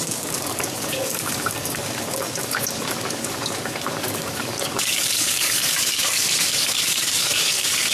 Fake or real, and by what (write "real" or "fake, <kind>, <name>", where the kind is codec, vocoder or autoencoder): fake, codec, DAC